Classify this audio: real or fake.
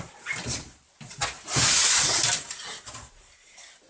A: real